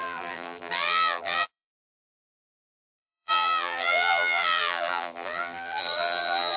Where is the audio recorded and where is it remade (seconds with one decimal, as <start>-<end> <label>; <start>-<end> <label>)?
0.0-6.6 remade